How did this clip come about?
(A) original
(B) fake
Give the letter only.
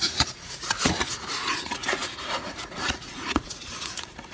B